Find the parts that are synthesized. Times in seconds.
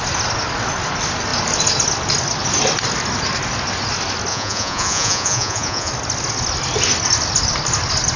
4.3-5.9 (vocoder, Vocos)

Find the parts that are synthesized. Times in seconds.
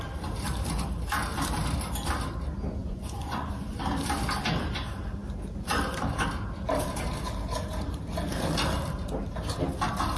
2.8-3.8 (vocoder, Vocos)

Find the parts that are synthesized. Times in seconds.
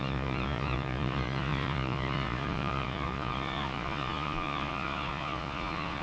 0.0-6.0 (vocoder, Vocos)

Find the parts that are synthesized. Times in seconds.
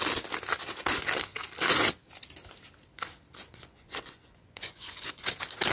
3.4-5.3 (vocoder, Vocos)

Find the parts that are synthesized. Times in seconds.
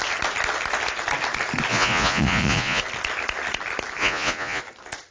1.7-2.8 (vocoder, Vocos); 4.0-4.6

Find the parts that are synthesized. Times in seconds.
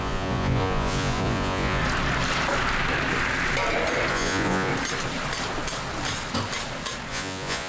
0.0-1.8 (vocoder, Vocos); 4.1-4.7; 7.1-7.7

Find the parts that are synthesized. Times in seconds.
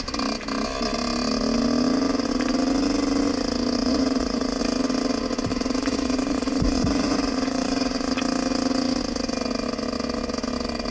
3.8-4.6 (vocoder, Vocos); 5.5-8.1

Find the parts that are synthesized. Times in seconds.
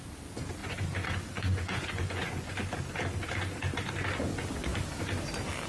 0.6-2.5 (vocoder, Vocos)